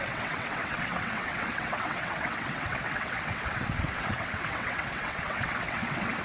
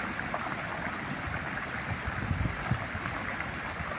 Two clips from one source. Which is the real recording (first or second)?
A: second